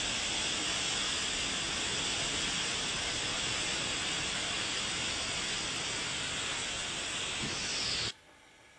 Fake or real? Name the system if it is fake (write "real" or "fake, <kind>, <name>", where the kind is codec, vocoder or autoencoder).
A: real